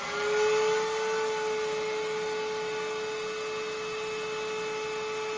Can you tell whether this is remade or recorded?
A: recorded